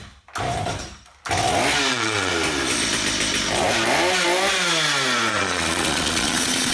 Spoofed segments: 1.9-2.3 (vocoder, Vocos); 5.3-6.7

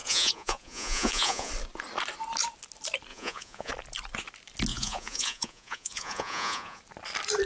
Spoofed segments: 0.0-1.5 (vocoder, Vocos); 3.1-3.7; 4.7-6.8

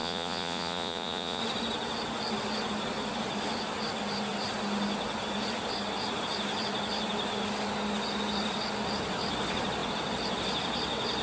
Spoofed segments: 0.0-1.4 (vocoder, Vocos)

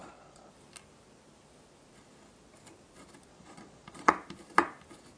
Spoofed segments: 0.0-0.5 (vocoder, Vocos); 3.3-4.1

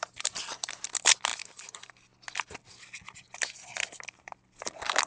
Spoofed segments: none

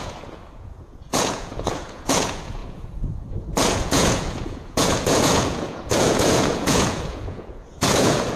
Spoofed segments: 0.0-8.4 (vocoder, Vocos)

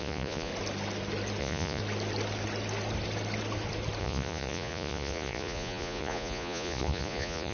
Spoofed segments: 0.0-0.5 (vocoder, Vocos); 1.4-1.8; 4.0-7.5

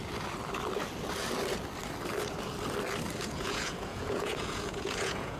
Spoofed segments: 3.2-5.4 (vocoder, Vocos)